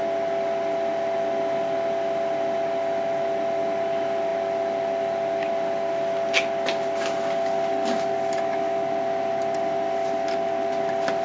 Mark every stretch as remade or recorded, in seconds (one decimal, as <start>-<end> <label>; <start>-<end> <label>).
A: 0.0-11.2 recorded